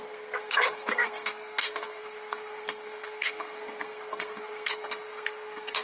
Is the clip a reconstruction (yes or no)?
yes